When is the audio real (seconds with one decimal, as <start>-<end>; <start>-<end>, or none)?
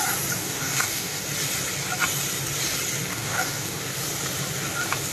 0.0-0.4; 1.2-3.1; 3.8-5.1